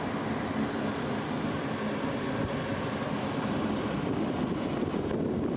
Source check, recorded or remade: recorded